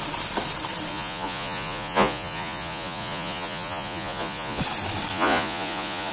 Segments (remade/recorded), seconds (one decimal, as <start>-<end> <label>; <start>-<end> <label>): 0.0-0.9 recorded; 0.9-4.6 remade; 4.6-5.1 recorded; 5.1-6.1 remade